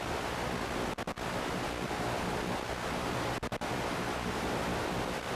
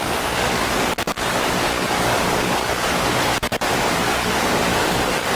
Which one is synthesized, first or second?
second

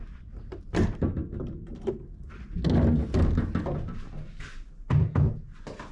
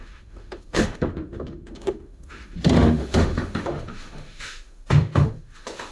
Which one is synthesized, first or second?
second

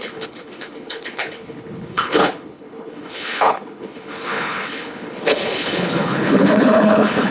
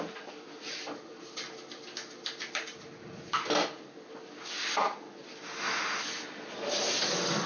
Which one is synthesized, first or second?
first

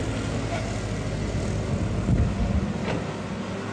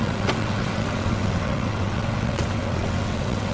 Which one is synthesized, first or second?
second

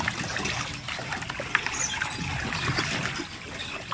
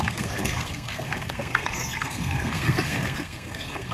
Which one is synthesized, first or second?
second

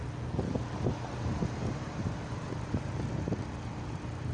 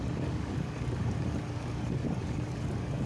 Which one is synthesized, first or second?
second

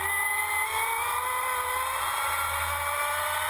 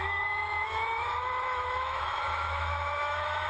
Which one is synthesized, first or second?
second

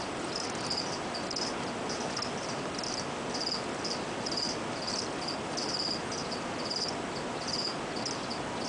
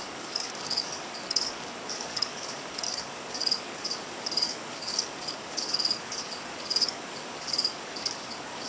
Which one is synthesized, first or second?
second